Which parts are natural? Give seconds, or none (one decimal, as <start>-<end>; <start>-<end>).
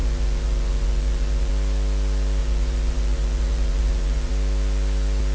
1.5-2.4; 4.3-5.3